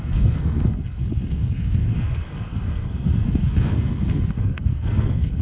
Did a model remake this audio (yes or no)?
yes